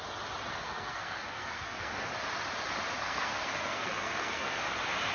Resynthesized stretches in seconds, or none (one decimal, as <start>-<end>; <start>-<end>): 0.5-2.1; 3.0-4.6